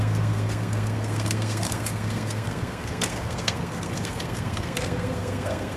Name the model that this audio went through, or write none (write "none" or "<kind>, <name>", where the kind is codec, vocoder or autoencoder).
codec, SNAC